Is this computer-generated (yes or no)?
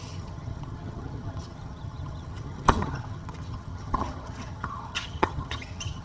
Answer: yes